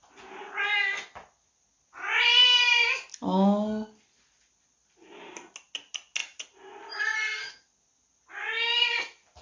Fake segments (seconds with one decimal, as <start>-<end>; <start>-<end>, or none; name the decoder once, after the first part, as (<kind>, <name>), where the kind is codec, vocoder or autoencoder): none